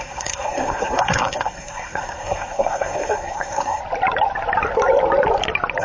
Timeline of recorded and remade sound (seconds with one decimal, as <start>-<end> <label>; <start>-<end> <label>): 0.0-3.8 remade; 3.8-5.8 recorded